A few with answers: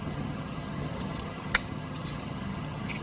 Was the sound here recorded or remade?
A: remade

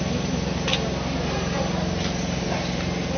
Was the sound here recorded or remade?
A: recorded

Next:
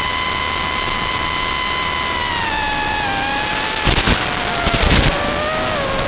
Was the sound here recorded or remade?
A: recorded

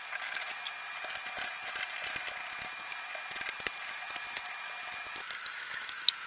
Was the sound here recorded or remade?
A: recorded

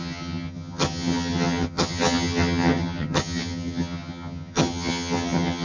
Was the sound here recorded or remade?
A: remade